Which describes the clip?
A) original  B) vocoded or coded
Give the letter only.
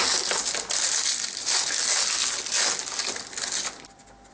A